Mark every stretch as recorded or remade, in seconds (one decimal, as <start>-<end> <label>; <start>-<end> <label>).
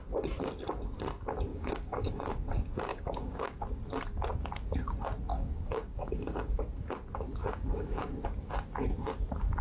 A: 0.0-1.5 recorded; 1.5-2.5 remade; 2.5-2.9 recorded; 2.9-3.6 remade; 3.6-5.3 recorded; 5.3-6.6 remade; 6.6-7.4 recorded; 7.4-8.1 remade; 8.1-9.6 recorded